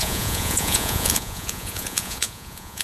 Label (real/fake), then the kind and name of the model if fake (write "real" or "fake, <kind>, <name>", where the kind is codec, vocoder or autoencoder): fake, vocoder, Vocos